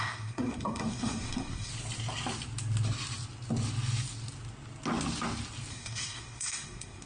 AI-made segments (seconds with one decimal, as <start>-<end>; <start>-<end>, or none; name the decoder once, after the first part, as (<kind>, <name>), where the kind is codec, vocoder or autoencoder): 0.0-1.7 (codec, SNAC); 5.7-7.1